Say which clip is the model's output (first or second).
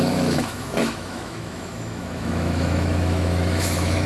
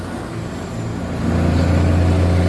first